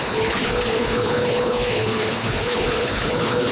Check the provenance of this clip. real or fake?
fake